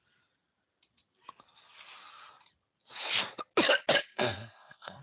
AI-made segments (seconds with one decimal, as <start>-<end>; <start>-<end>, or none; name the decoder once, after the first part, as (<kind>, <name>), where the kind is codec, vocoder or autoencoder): 4.1-5.0 (codec, SNAC)